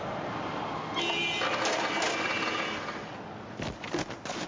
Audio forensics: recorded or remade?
recorded